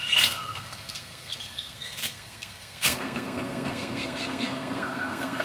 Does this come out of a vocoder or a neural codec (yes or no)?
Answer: yes